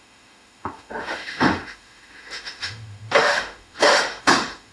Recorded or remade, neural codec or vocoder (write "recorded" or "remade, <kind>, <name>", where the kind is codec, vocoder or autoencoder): remade, autoencoder, DAC-VAE